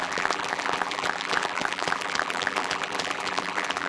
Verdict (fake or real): fake